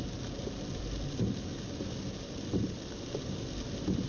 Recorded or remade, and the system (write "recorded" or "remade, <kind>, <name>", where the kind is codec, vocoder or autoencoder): recorded